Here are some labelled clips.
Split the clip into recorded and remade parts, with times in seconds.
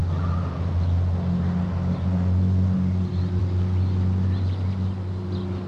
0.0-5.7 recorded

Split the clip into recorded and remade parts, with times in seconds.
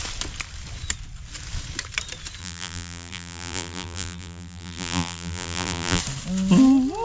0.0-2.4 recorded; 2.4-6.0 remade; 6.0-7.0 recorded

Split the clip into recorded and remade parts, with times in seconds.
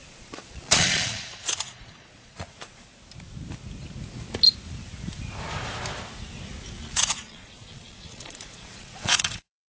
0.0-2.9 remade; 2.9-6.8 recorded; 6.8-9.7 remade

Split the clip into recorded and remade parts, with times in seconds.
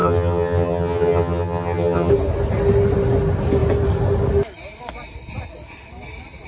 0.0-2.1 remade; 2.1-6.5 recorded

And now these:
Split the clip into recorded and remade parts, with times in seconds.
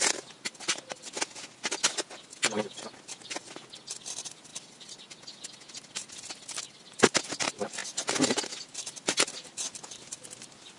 0.0-10.8 recorded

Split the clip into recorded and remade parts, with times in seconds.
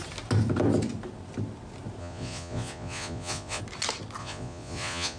0.0-2.0 recorded; 2.0-3.6 remade; 3.6-4.2 recorded; 4.2-5.2 remade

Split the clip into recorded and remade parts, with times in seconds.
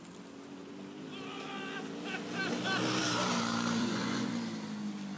0.0-3.8 recorded; 3.8-4.3 remade; 4.3-5.2 recorded